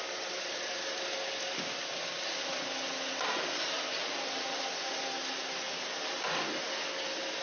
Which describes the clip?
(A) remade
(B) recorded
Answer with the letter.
B